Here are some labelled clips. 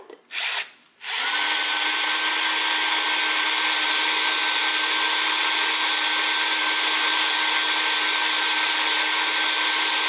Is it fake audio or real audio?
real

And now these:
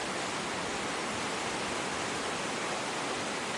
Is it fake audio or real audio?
real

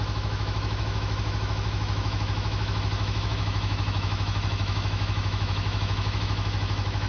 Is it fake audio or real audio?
fake